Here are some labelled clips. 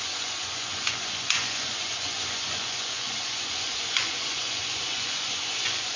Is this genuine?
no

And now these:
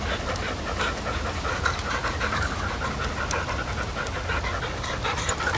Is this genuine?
yes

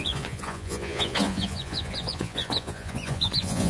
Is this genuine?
no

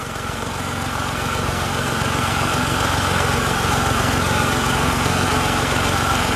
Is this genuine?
no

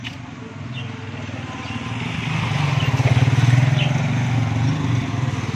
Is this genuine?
yes